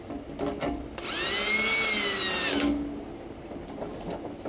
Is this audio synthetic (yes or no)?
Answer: no